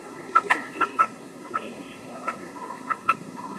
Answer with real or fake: fake